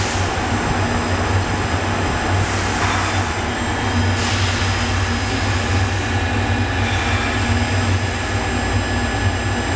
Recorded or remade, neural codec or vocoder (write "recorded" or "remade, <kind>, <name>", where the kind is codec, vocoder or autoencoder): recorded